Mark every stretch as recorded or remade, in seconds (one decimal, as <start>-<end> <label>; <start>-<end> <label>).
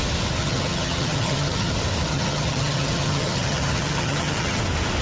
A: 0.0-0.4 recorded; 0.4-1.7 remade; 1.7-2.1 recorded; 2.1-4.6 remade; 4.6-5.0 recorded